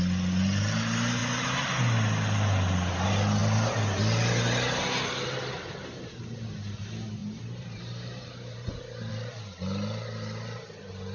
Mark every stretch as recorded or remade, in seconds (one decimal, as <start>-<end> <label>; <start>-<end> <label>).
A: 0.0-7.2 recorded; 7.2-9.1 remade; 9.1-11.1 recorded